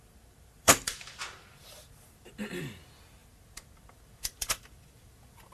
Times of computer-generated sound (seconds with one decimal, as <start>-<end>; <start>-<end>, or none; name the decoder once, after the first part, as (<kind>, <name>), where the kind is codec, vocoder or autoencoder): 0.0-5.5 (vocoder, BigVGAN v2)